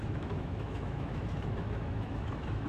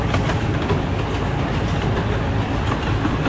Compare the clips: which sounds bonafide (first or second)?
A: second